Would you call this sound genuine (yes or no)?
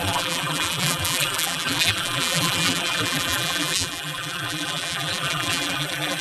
no